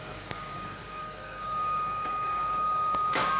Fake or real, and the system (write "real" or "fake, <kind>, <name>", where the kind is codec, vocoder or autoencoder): fake, codec, DAC